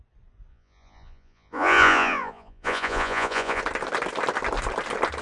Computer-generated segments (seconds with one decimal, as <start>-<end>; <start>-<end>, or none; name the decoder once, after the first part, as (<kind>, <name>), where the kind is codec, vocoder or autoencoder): 0.5-3.6 (vocoder, Vocos)